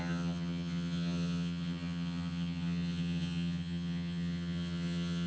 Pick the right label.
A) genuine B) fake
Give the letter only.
B